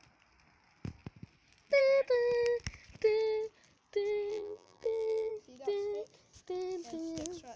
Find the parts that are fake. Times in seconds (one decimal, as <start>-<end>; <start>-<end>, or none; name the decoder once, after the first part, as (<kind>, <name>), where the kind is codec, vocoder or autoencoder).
4.3-5.3 (vocoder, BigVGAN v2)